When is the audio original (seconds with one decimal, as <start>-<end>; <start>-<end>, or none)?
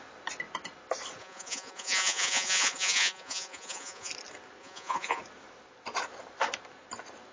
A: 0.0-1.2; 4.1-4.6; 5.2-7.3